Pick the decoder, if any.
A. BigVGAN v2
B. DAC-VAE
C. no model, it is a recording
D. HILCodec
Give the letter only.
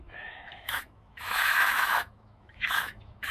B